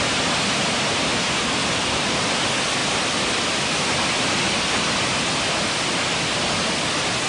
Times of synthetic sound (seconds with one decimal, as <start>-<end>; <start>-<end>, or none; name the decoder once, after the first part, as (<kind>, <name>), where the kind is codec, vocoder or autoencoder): 1.6-2.4 (vocoder, BigVGAN v2)